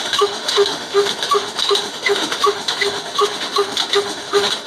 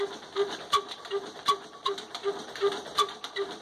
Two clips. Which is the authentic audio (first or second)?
second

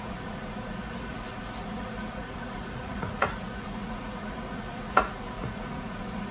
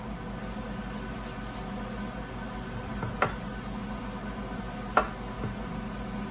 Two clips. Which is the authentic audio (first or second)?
second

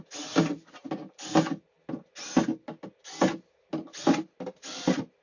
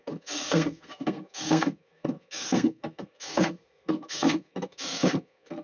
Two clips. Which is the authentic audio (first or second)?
first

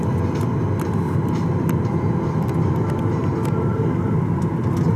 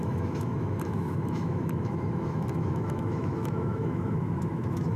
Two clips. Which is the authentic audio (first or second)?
first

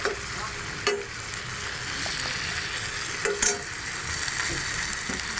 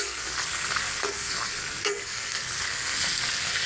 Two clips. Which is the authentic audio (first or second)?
first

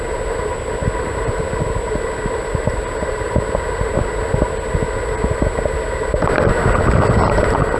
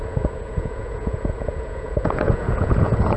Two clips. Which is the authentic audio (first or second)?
first